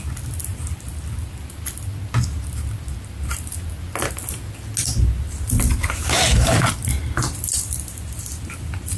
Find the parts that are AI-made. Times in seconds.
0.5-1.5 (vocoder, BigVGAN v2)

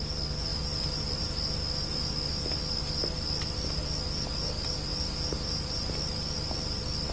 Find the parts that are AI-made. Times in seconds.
0.5-1.2 (vocoder, BigVGAN v2); 4.9-5.7

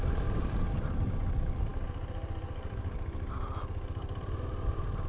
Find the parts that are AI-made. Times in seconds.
1.7-5.1 (vocoder, BigVGAN v2)

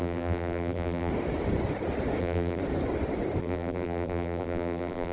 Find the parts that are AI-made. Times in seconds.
0.0-1.1 (vocoder, BigVGAN v2); 2.2-2.6; 3.4-5.1

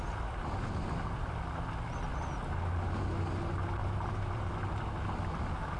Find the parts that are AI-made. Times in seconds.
3.8-4.6 (vocoder, BigVGAN v2)